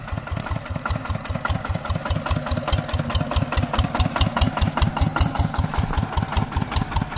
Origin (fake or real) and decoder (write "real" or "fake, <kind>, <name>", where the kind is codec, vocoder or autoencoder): real